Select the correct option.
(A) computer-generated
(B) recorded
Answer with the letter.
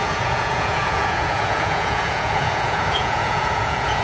A